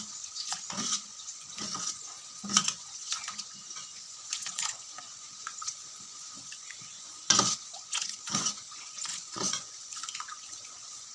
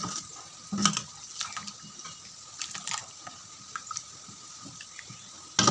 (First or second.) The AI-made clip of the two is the first